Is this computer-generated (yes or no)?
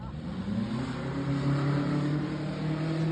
no